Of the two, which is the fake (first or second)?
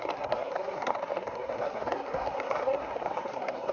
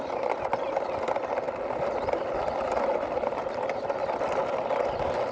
first